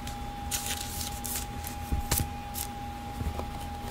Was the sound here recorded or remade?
recorded